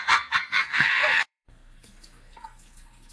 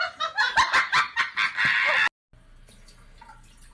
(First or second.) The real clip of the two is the second